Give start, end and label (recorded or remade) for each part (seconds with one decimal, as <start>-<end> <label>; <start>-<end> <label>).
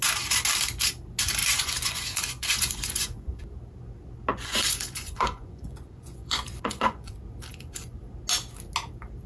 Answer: 0.0-1.4 recorded; 1.4-3.4 remade; 3.4-4.3 recorded; 4.3-7.1 remade; 7.1-7.5 recorded; 7.5-8.0 remade; 8.0-9.3 recorded